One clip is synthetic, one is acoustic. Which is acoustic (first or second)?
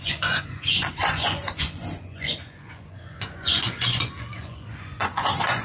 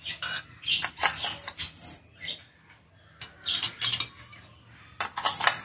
second